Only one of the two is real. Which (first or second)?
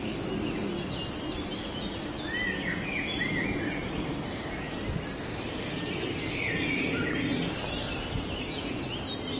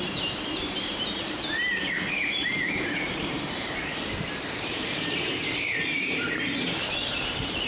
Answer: first